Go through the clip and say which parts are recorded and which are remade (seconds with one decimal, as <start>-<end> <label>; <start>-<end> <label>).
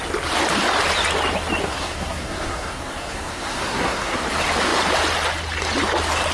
0.0-1.6 recorded; 1.6-4.2 remade; 4.2-6.3 recorded